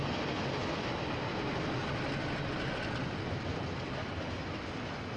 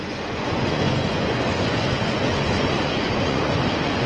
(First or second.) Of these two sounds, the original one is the first